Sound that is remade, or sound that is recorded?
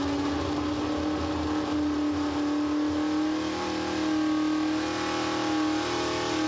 recorded